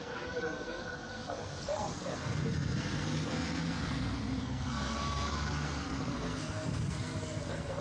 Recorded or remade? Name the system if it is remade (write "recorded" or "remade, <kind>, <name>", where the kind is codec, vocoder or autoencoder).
remade, codec, SNAC